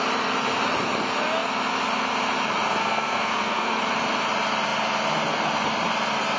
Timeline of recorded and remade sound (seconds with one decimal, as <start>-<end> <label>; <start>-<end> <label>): 0.0-2.8 recorded; 2.8-3.8 remade; 3.8-6.4 recorded